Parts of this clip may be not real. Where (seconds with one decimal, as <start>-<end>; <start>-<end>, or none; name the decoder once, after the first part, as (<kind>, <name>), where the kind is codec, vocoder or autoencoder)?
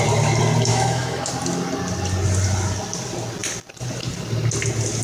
0.7-1.3 (autoencoder, DAC-VAE)